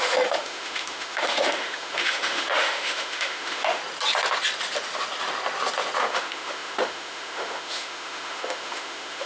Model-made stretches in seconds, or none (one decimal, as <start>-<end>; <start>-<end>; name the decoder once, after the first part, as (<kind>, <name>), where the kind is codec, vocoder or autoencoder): 0.0-3.8 (autoencoder, DAC-VAE); 6.1-9.3